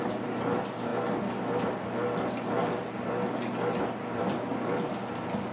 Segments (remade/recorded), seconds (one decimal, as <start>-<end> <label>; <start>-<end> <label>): 0.0-5.5 recorded